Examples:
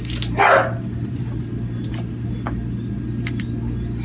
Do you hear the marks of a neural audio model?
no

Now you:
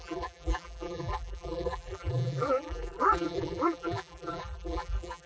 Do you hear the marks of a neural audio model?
yes